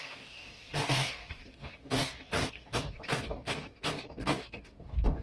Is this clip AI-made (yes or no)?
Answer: yes